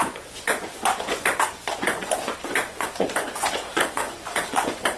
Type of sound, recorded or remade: remade